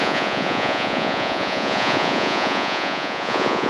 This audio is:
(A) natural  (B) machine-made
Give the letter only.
B